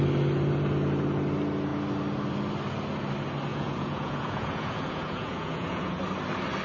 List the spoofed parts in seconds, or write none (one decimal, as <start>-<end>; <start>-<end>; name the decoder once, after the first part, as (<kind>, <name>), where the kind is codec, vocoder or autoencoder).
3.5-6.0 (vocoder, Vocos)